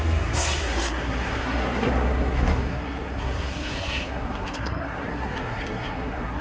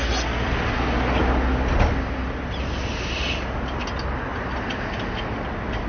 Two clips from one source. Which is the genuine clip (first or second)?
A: second